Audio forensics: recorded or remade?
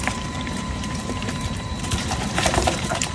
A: remade